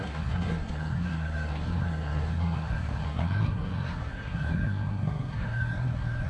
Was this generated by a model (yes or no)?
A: yes